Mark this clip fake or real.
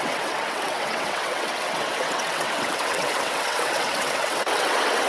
fake